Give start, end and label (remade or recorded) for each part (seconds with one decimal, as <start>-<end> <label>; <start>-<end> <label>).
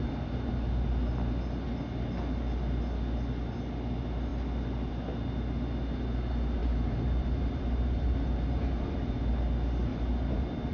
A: 0.0-6.6 recorded; 6.6-9.1 remade; 9.1-10.7 recorded